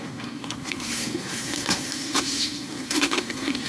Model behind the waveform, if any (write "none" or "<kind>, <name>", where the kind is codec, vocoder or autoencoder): codec, SNAC